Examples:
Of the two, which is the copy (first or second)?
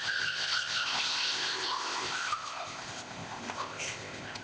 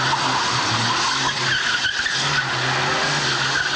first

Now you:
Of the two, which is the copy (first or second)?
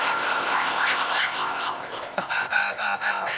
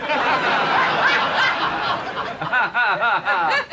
first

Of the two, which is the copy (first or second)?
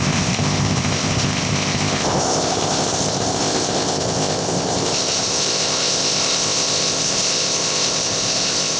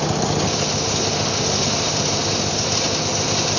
first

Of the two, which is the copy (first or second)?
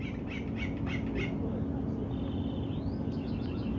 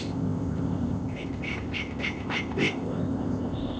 second